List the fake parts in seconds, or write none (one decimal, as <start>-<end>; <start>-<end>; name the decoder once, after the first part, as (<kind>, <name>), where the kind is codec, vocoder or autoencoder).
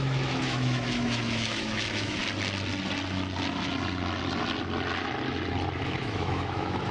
0.0-2.2 (autoencoder, DAC-VAE); 5.8-6.9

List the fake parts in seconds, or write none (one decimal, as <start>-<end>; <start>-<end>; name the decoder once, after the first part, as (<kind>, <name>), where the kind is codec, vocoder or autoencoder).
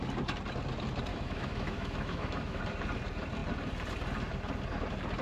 1.1-2.6 (autoencoder, DAC-VAE)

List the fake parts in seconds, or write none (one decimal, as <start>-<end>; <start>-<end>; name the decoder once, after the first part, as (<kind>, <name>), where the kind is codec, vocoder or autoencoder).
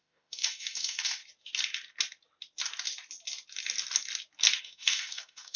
0.0-1.2 (autoencoder, DAC-VAE); 4.6-5.6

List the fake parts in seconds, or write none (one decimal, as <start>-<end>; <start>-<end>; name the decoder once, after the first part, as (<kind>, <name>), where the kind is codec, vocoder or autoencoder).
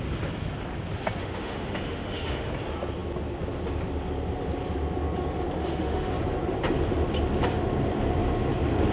1.2-2.5 (autoencoder, DAC-VAE); 5.6-6.1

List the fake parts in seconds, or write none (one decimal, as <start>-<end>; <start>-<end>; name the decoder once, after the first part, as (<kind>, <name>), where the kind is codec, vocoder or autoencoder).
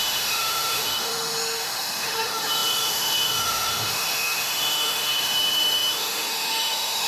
0.0-7.1 (autoencoder, DAC-VAE)